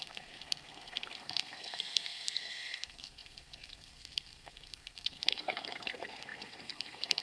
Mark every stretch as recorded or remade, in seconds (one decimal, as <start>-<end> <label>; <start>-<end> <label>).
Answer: 0.0-7.2 remade